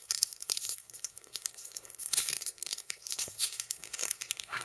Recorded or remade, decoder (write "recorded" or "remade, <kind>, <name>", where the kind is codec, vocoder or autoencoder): remade, codec, SNAC